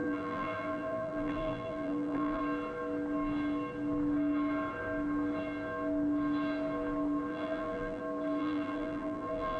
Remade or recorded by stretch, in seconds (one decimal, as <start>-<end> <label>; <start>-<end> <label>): 0.0-2.4 remade; 2.4-7.3 recorded; 7.3-8.0 remade; 8.0-8.4 recorded; 8.4-9.6 remade